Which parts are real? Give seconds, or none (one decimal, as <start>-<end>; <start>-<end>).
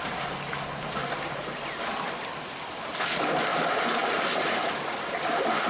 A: 0.0-5.7